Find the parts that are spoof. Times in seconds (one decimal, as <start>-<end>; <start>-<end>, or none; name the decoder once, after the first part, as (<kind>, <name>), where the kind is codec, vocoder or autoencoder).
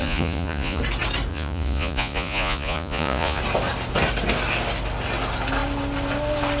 0.0-0.8 (vocoder, Vocos); 1.3-3.4